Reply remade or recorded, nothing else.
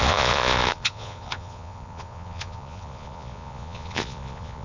remade